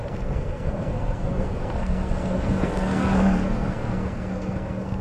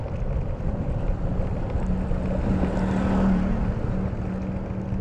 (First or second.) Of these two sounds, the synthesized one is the first